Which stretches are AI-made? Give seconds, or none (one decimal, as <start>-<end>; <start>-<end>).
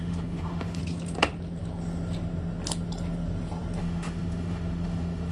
0.0-0.8; 3.8-5.3